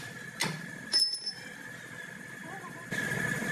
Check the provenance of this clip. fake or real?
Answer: real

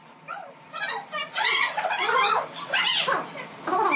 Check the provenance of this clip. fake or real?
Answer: real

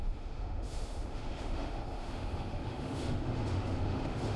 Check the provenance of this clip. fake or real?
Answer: fake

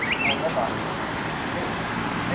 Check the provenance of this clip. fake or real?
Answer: real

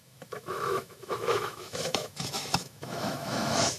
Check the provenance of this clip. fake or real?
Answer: fake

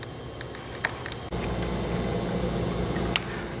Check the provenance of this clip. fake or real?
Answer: real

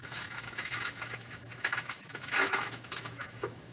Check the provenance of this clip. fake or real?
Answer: fake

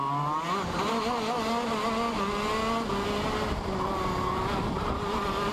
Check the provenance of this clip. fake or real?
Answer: real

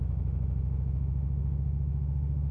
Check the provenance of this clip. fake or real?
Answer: fake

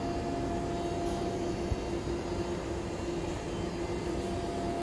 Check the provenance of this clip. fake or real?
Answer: real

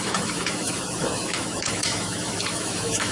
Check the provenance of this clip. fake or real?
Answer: fake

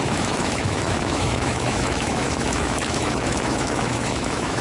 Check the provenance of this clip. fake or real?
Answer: fake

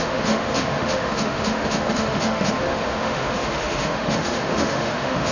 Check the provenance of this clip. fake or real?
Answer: fake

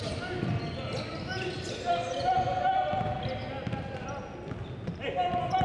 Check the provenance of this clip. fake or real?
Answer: real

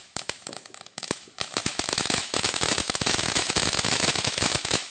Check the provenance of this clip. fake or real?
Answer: fake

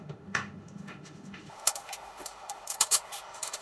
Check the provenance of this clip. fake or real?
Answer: fake